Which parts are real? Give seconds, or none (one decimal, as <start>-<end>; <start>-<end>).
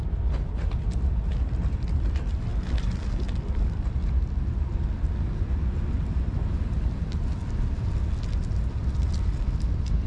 0.0-10.1